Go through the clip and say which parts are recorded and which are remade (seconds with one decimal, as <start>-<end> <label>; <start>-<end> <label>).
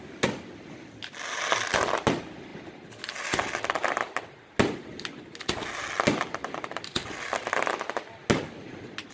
0.0-9.1 recorded